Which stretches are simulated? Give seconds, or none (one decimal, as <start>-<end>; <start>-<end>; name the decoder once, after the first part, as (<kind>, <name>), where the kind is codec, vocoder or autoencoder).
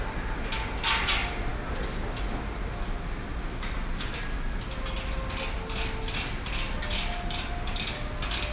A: none